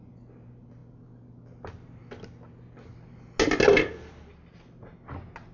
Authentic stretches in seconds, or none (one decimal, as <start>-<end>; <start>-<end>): 0.0-5.5